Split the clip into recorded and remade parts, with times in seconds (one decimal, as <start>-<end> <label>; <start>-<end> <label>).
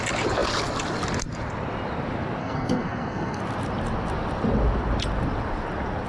0.0-2.4 recorded; 2.4-3.4 remade; 3.4-6.1 recorded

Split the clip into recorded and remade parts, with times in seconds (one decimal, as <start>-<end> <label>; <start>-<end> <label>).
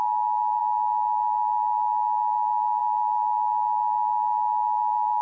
0.0-5.2 recorded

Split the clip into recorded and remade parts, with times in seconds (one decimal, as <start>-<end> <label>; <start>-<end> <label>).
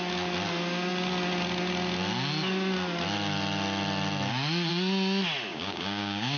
0.0-5.5 recorded; 5.5-6.4 remade